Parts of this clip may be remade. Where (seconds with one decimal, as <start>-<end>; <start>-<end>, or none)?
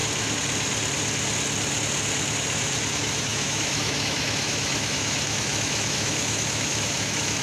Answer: 2.9-7.4